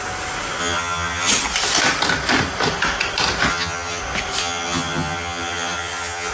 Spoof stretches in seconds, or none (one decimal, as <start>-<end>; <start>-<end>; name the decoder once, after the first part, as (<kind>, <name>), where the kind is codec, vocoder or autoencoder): 0.6-1.3 (vocoder, HiFi-GAN); 3.5-4.0; 4.4-6.3